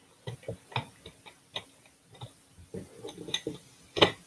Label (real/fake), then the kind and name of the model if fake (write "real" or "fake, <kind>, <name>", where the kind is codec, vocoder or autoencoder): real